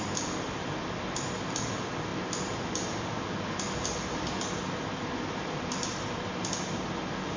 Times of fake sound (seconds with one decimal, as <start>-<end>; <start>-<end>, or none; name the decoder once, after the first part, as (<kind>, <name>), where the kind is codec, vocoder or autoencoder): none